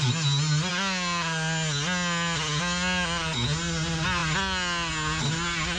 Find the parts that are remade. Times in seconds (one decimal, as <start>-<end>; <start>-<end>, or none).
none

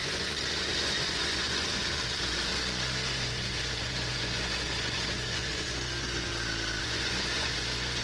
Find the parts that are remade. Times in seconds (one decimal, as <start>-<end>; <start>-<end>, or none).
0.0-2.5; 3.1-6.3; 6.8-8.0

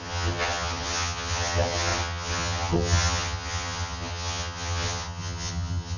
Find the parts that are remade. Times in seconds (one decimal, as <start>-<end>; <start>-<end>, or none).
0.0-6.0

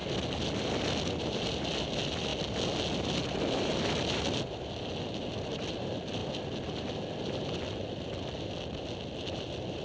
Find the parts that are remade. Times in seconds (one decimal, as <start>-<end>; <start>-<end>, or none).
none

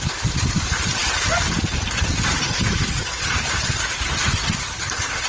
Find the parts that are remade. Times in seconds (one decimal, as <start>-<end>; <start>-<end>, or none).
none

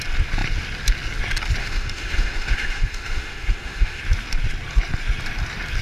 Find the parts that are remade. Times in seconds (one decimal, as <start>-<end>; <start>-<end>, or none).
1.6-4.0

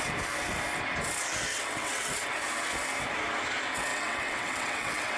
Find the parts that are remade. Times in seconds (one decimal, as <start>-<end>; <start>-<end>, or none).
1.5-2.1; 3.9-5.2

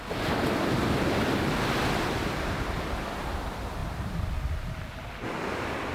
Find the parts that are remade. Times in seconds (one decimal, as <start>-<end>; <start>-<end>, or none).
3.8-4.3